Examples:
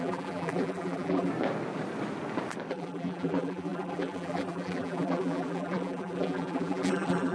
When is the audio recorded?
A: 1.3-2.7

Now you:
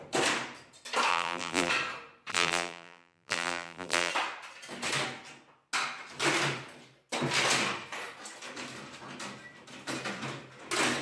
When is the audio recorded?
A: 0.0-1.1; 1.7-2.3; 4.1-11.0